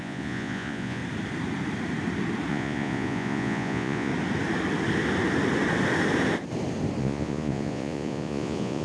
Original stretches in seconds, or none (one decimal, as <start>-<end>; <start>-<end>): 1.0-2.5; 4.1-7.0